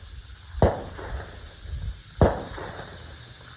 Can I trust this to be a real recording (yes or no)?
yes